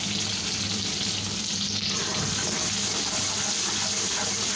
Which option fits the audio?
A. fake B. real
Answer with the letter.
B